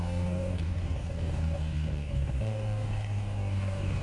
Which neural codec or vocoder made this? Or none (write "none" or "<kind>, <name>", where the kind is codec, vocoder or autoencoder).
codec, DAC